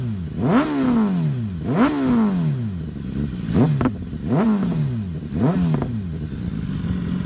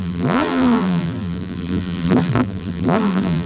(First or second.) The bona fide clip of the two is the first